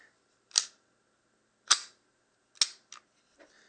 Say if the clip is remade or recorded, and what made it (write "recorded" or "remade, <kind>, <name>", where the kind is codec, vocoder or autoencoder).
recorded